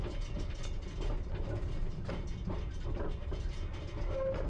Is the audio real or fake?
real